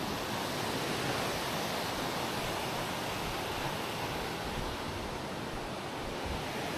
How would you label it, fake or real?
real